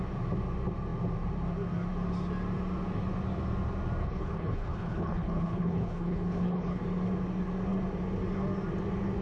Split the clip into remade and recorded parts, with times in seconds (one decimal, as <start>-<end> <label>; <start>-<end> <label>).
0.0-4.0 recorded; 4.0-6.8 remade; 6.8-9.2 recorded